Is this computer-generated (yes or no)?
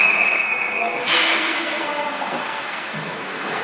yes